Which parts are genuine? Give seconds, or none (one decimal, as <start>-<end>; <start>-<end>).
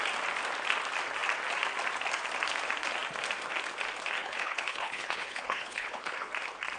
0.0-4.2; 6.3-6.8